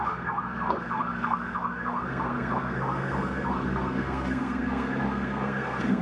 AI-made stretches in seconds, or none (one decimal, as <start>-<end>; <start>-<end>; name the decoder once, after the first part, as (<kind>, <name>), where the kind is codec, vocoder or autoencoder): 0.0-6.0 (codec, SNAC)